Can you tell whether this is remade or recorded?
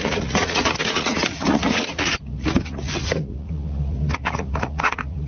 remade